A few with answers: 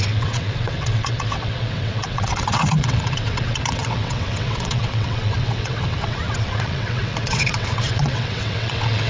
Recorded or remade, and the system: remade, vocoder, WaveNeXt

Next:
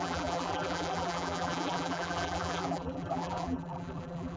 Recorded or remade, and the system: remade, vocoder, BigVGAN v2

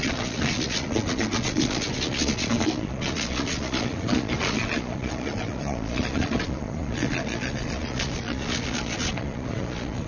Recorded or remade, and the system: remade, vocoder, Vocos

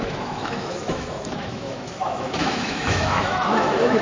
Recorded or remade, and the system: remade, autoencoder, DAC-VAE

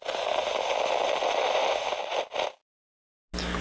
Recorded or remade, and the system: recorded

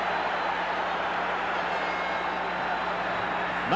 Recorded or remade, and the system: recorded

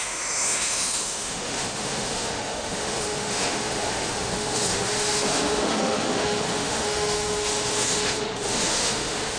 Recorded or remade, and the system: remade, autoencoder, DAC-VAE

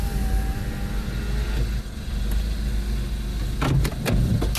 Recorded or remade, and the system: recorded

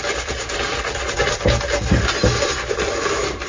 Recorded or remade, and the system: recorded